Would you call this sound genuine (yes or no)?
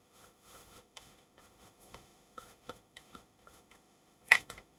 no